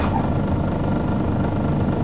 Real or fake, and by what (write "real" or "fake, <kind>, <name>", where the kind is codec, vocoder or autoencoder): real